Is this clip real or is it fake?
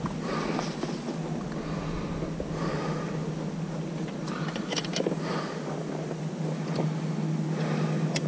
real